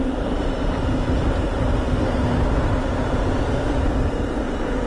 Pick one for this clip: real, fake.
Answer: real